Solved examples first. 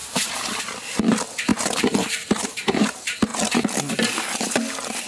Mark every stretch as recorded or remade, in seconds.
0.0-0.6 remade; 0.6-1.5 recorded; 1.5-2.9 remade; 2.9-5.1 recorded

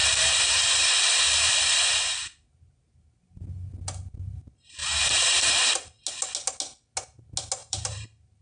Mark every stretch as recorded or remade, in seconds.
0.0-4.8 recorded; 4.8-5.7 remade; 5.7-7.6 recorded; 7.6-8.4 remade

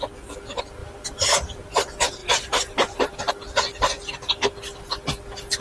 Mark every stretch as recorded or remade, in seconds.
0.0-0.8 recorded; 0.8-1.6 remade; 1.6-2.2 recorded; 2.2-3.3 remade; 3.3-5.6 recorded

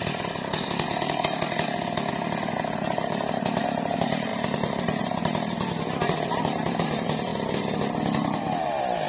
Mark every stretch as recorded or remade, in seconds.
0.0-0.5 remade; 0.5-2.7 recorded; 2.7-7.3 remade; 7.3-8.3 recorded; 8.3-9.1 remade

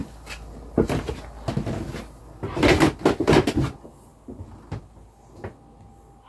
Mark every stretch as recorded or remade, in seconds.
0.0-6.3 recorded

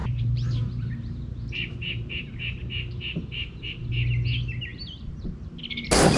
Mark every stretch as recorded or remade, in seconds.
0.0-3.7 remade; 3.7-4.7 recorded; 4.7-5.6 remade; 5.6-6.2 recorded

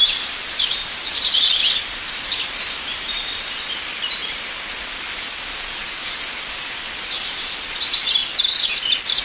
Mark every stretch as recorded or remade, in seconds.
0.0-4.2 remade; 4.2-6.5 recorded; 6.5-8.2 remade; 8.2-9.2 recorded

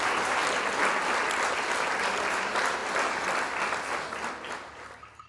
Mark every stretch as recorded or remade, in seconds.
0.0-0.4 remade; 0.4-2.3 recorded; 2.3-2.8 remade; 2.8-4.3 recorded; 4.3-5.3 remade